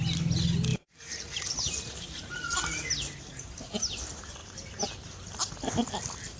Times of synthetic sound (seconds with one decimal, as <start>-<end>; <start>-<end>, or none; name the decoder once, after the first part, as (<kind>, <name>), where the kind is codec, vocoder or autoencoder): 0.7-4.0 (vocoder, BigVGAN v2); 4.4-4.9